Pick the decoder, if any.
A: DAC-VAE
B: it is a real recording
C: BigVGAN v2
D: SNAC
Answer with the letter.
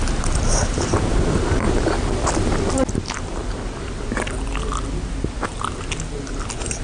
B